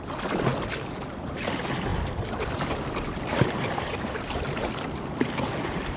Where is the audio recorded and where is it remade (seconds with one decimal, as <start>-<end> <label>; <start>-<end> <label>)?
0.0-6.0 recorded